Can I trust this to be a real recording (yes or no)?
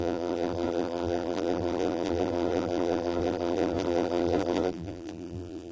no